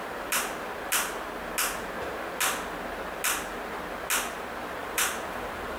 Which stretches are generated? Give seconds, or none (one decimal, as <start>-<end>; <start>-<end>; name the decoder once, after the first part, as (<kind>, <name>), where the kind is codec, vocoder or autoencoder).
4.8-5.8 (vocoder, BigVGAN v2)